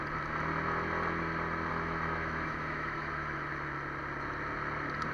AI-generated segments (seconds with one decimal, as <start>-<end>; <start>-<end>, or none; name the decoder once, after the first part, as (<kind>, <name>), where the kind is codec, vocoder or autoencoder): 1.7-3.5 (autoencoder, DAC-VAE)